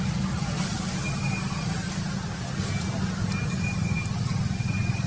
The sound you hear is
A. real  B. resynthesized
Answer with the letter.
A